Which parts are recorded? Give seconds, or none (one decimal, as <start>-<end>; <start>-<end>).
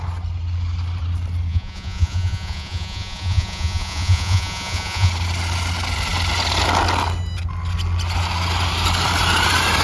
0.0-1.5; 5.1-9.8